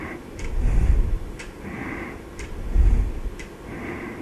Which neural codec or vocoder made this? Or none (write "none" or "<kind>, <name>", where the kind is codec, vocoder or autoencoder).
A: vocoder, BigVGAN v2